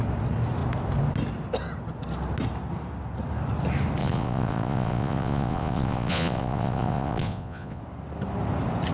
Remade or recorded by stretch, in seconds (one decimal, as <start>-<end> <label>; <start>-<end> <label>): 0.0-4.0 recorded; 4.0-7.8 remade; 7.8-8.9 recorded